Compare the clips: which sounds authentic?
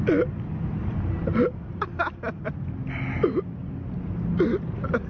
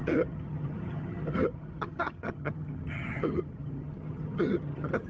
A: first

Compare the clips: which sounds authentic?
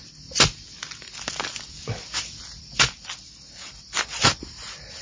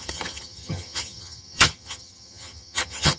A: first